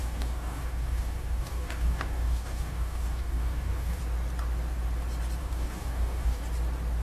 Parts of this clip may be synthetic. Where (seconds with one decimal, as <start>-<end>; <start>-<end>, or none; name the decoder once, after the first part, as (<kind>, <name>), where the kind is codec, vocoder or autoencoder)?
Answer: 0.0-4.0 (codec, DAC); 5.4-6.4